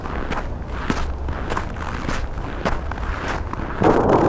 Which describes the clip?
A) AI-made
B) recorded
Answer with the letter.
B